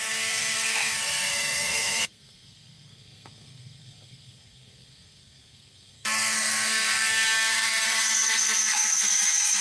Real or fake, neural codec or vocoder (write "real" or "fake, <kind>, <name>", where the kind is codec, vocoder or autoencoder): fake, codec, SNAC